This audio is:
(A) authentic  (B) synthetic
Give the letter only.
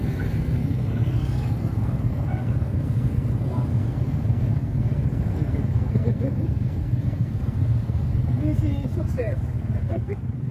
B